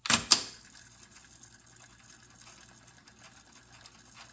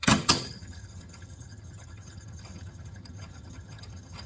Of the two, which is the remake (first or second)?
second